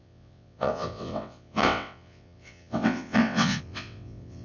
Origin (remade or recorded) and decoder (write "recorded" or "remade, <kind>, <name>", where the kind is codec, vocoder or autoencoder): remade, vocoder, WaveNeXt